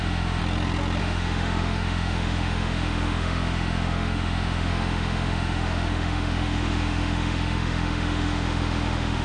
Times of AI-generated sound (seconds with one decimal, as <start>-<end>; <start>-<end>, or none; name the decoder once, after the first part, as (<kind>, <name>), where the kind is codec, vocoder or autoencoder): 0.0-0.4 (autoencoder, DAC-VAE); 1.0-9.2